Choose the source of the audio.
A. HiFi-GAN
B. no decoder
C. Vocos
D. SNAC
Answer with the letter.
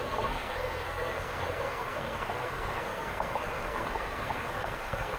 D